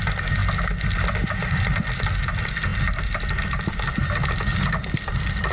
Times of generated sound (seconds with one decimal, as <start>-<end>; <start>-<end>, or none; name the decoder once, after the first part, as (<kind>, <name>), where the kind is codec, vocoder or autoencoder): none